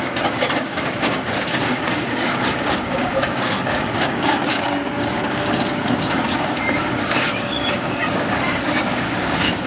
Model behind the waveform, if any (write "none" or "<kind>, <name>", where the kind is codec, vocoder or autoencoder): codec, DAC